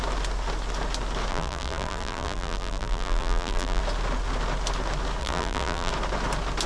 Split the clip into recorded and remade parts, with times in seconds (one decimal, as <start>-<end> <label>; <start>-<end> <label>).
0.0-1.3 recorded; 1.3-3.8 remade; 3.8-5.2 recorded; 5.2-5.9 remade; 5.9-6.7 recorded